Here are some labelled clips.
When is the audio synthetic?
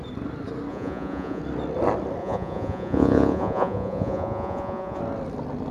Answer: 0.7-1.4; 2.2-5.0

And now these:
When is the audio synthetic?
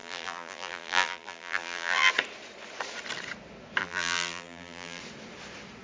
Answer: 0.0-2.1; 3.8-5.0